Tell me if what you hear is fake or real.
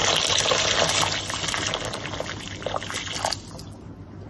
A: real